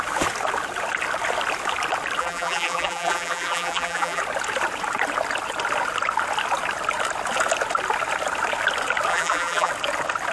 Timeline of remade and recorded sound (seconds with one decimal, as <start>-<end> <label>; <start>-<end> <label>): 0.0-2.2 recorded; 2.2-4.2 remade; 4.2-9.1 recorded; 9.1-9.7 remade; 9.7-10.3 recorded